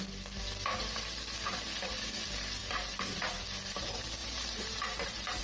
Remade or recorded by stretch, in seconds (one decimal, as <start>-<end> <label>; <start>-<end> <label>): 0.0-4.2 recorded; 4.2-5.4 remade